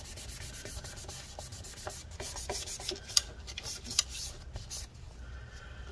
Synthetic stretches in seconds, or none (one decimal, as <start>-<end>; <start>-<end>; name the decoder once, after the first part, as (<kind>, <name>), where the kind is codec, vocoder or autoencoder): none